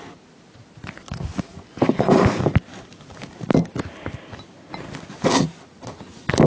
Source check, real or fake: real